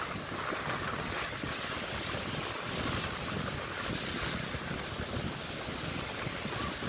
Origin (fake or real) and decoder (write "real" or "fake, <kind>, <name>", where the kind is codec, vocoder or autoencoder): real